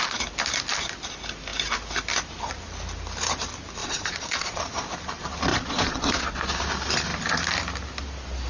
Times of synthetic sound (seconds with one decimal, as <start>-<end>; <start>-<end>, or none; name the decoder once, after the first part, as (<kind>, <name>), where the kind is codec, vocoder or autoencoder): 3.8-4.6 (vocoder, Vocos); 5.5-6.5